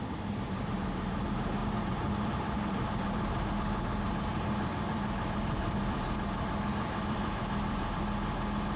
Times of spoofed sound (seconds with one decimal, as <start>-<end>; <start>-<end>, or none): 1.6-3.5; 4.3-8.0